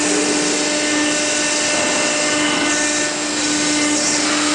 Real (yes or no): yes